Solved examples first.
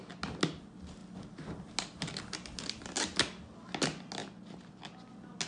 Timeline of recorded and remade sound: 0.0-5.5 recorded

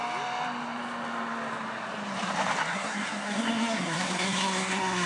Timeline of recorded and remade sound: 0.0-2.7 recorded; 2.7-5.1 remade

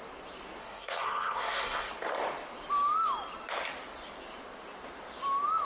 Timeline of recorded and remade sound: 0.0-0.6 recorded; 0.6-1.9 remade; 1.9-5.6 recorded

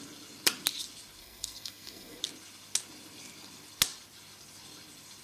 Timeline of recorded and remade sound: 0.0-1.2 recorded; 1.2-2.2 remade; 2.2-5.2 recorded

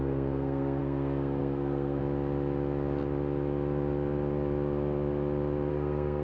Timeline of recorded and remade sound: 0.0-2.0 remade; 2.0-5.7 recorded; 5.7-6.2 remade

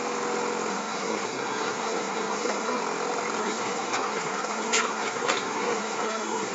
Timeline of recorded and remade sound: 0.0-0.7 recorded; 0.7-2.8 remade; 2.8-3.4 recorded; 3.4-6.5 remade

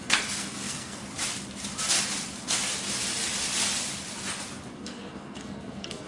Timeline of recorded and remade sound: 0.0-1.0 remade; 1.0-4.7 recorded; 4.7-6.1 remade

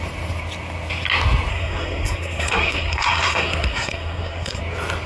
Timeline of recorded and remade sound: 0.0-1.5 recorded; 1.5-4.6 remade; 4.6-5.1 recorded